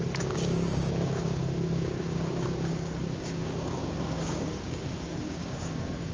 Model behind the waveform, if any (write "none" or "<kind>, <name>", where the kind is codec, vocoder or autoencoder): codec, DAC